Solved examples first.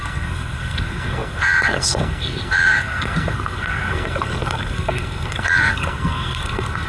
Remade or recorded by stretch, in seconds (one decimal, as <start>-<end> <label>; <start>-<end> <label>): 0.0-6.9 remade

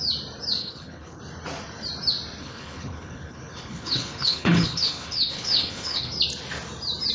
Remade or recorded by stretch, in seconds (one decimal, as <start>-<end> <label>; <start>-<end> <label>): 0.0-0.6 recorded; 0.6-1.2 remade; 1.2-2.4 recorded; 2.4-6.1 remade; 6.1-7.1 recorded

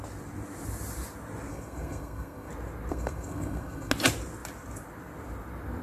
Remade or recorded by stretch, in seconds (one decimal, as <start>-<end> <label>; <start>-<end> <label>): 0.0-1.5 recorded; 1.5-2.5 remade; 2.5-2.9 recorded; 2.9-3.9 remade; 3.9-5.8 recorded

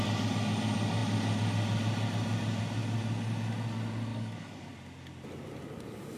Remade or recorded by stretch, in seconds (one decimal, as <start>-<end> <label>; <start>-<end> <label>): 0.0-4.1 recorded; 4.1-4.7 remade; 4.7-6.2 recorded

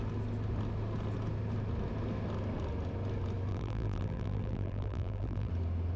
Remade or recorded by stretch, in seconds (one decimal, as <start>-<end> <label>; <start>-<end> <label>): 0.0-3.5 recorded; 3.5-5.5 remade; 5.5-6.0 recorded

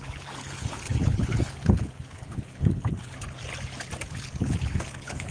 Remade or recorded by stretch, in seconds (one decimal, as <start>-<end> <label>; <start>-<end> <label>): 0.0-3.4 remade; 3.4-4.1 recorded; 4.1-5.3 remade

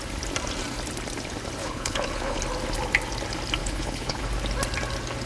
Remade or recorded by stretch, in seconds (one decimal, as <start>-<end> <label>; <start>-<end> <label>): 0.0-1.6 recorded; 1.6-2.4 remade; 2.4-3.6 recorded; 3.6-4.2 remade; 4.2-5.3 recorded

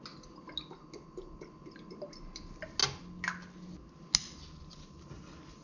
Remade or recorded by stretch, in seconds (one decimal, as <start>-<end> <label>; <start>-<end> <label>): 0.0-5.6 recorded